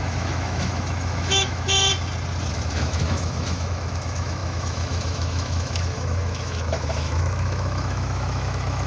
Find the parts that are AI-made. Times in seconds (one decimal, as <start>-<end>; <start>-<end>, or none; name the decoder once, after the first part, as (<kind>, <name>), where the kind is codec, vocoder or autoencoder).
0.0-1.9 (autoencoder, DAC-VAE); 2.5-8.9